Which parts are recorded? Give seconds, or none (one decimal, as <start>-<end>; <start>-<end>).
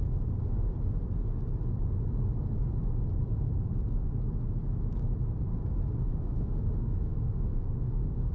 0.0-6.1